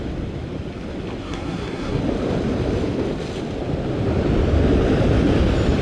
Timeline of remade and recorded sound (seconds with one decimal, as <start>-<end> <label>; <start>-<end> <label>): 0.0-1.2 recorded; 1.2-2.0 remade; 2.0-5.8 recorded